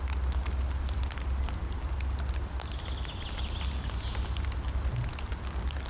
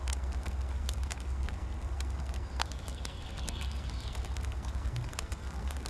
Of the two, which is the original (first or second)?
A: first